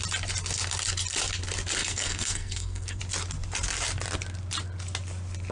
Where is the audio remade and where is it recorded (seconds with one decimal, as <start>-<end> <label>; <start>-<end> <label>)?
0.0-1.8 recorded; 1.8-3.0 remade; 3.0-5.5 recorded